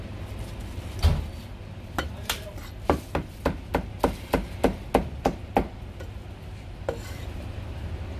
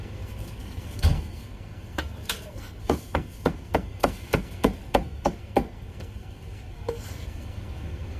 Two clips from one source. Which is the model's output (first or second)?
second